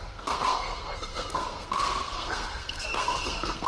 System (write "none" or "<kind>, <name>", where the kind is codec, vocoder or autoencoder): codec, SNAC